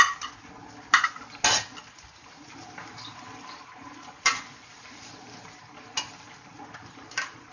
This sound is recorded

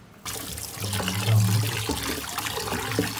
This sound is recorded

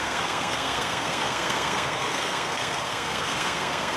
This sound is remade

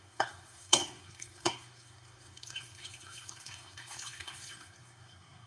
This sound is remade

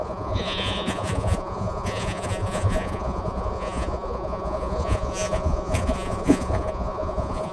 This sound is remade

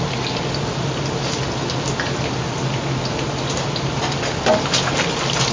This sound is recorded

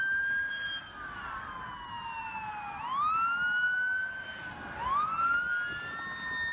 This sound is recorded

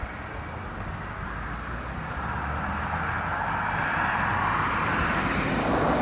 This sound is recorded